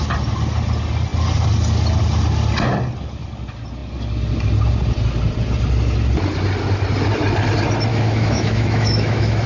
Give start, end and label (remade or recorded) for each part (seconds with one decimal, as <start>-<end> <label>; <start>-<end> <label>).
0.0-7.9 recorded; 7.9-9.5 remade